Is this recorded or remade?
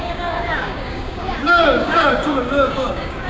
remade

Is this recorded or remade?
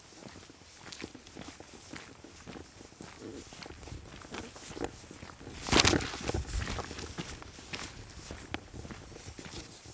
recorded